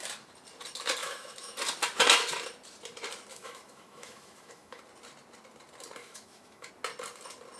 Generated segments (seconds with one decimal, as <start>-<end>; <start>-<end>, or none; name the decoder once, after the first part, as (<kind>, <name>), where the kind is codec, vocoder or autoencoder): 1.0-1.5 (autoencoder, DAC-VAE); 3.3-4.8; 6.0-6.7